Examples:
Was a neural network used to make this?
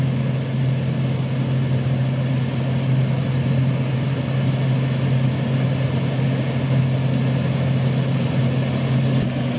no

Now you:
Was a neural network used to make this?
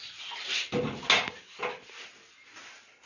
no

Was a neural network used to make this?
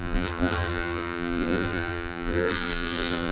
yes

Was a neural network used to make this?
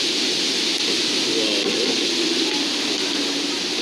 no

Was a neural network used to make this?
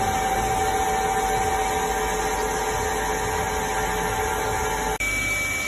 no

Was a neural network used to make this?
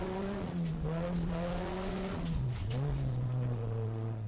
yes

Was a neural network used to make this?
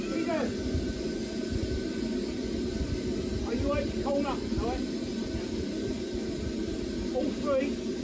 no